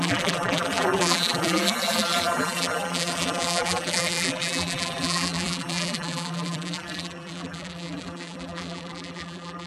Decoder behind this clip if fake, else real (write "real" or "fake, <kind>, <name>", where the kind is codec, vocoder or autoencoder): fake, vocoder, BigVGAN v2